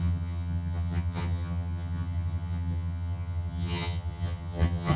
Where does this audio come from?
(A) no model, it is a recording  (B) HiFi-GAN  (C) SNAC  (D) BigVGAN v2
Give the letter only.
B